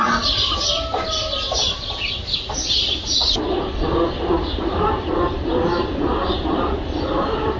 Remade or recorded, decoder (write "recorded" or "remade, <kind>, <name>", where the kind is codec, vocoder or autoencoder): recorded